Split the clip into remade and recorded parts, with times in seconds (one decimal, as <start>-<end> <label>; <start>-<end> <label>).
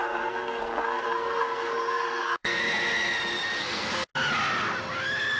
0.0-2.6 remade; 2.6-3.6 recorded; 3.6-4.1 remade; 4.1-5.4 recorded